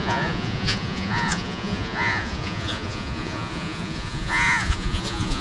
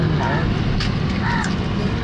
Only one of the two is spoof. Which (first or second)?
first